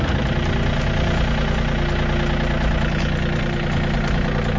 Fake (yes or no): no